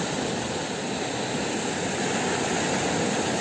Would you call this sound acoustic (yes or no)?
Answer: yes